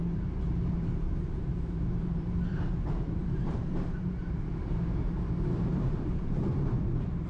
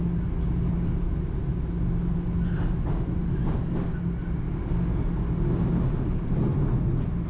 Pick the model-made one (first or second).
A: first